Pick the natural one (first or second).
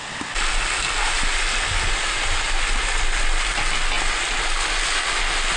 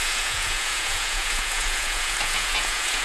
first